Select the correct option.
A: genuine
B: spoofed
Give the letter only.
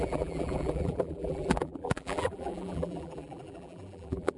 B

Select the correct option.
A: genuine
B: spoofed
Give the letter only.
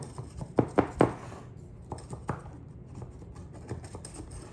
A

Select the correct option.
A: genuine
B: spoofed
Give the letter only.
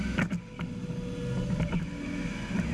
A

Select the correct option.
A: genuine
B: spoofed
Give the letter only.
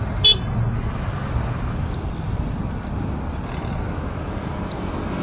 A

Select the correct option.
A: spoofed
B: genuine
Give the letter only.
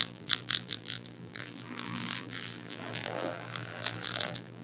A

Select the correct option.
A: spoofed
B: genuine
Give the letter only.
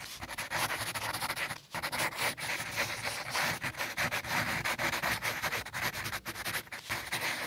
A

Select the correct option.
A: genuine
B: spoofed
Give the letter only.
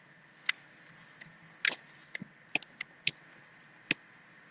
A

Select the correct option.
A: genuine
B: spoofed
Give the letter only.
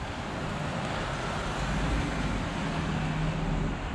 A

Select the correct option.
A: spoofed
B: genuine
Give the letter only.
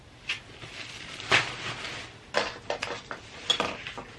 B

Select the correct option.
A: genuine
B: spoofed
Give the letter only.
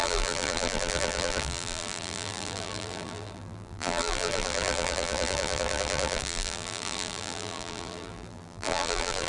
B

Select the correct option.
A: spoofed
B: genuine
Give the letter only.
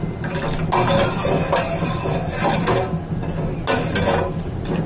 B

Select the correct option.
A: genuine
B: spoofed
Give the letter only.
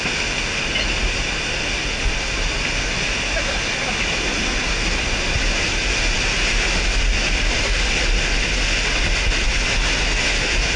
A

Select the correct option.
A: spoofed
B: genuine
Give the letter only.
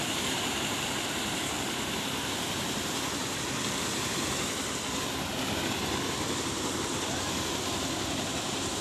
A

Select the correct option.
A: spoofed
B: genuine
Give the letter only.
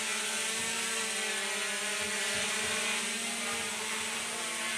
A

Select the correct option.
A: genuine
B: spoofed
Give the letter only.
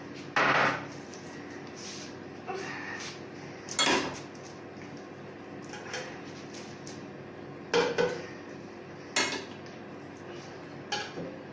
A